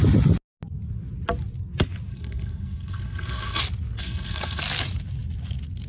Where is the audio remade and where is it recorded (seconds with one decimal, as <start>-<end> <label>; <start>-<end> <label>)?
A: 0.0-2.1 recorded; 2.1-3.6 remade; 3.6-4.0 recorded; 4.0-4.6 remade; 4.6-5.9 recorded